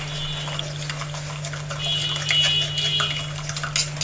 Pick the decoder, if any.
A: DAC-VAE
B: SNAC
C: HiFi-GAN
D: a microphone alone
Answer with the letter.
D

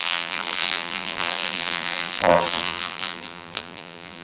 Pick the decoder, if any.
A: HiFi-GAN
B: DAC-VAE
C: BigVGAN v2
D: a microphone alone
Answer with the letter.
C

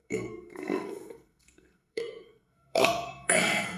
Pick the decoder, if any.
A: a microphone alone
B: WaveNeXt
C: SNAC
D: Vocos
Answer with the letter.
C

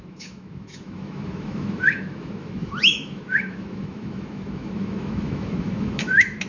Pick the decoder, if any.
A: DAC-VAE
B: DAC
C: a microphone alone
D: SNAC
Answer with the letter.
A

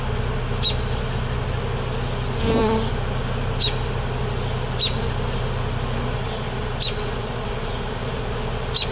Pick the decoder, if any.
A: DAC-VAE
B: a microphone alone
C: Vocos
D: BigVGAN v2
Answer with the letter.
B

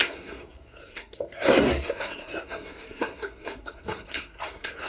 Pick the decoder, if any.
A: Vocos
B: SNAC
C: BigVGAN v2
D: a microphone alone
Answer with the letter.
B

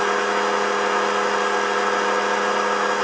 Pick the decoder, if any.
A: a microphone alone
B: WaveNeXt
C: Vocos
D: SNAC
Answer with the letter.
A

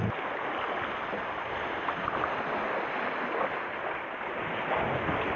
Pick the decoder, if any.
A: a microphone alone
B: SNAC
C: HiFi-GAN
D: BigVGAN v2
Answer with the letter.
A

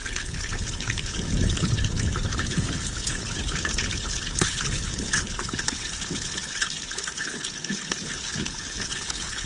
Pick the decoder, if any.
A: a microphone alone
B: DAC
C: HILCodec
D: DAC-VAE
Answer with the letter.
C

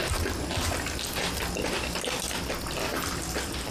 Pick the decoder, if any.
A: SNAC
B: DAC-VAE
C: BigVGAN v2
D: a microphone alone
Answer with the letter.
D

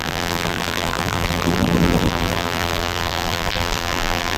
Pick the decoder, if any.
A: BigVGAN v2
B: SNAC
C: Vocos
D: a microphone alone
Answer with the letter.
A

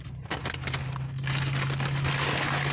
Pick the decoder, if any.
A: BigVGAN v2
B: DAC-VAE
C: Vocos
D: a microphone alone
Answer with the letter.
D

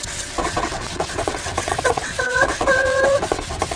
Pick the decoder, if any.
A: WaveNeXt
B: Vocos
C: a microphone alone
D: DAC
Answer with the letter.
A